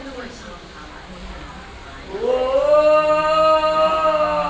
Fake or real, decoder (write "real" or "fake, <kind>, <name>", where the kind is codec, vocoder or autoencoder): real